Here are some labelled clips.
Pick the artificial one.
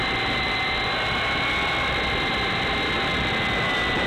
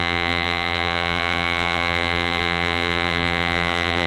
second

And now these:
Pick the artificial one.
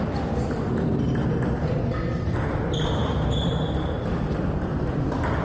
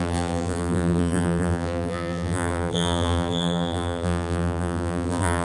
second